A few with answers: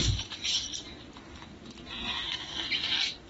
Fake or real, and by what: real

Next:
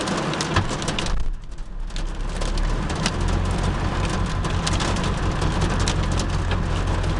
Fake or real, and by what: real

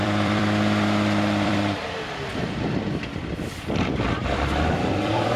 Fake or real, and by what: fake, vocoder, BigVGAN v2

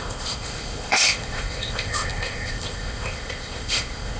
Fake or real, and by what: fake, codec, ZipCodec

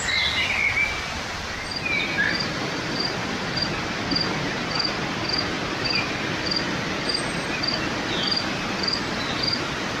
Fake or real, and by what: real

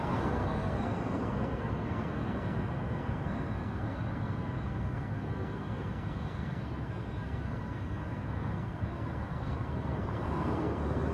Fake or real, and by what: fake, codec, SNAC